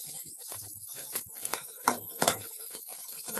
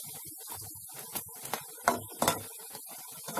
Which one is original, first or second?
second